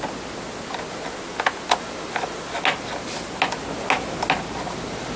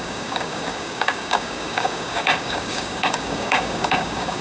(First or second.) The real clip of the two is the first